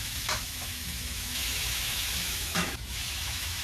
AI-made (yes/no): yes